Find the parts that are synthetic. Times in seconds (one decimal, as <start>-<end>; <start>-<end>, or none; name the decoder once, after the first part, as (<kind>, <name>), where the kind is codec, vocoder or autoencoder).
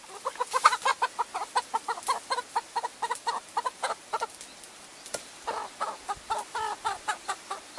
none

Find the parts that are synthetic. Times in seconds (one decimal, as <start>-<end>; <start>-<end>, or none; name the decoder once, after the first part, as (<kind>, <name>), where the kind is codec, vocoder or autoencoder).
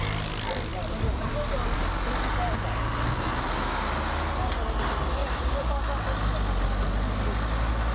5.2-5.8 (vocoder, BigVGAN v2)